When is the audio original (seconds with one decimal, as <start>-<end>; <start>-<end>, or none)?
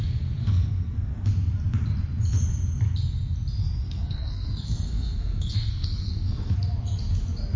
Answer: 0.0-0.4; 1.3-3.6; 6.6-7.6